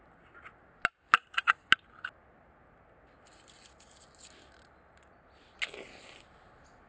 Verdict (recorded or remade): recorded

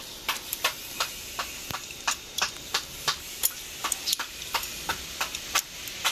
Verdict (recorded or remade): remade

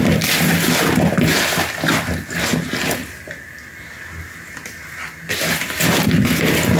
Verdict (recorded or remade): recorded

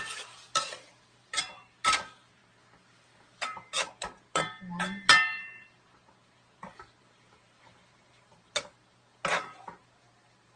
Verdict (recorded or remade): remade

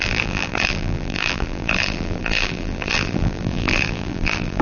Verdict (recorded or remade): remade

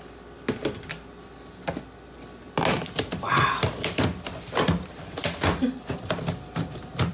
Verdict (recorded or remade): recorded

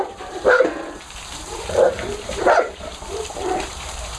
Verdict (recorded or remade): remade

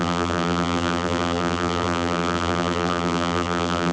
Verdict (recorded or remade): remade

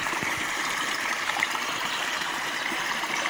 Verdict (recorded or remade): remade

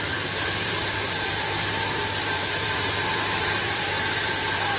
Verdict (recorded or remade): remade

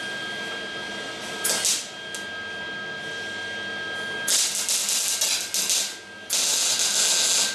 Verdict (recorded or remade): recorded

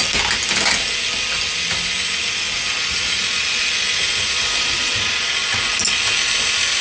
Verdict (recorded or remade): recorded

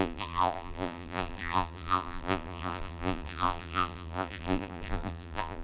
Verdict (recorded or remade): remade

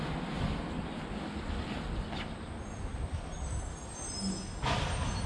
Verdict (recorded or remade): recorded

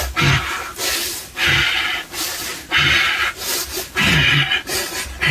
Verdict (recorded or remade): recorded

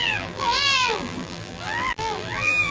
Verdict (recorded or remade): remade